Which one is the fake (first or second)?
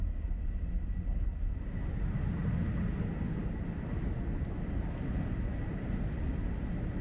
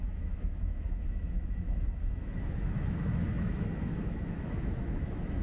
second